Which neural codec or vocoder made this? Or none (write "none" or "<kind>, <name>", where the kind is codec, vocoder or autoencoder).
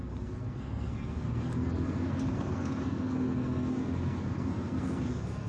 codec, SNAC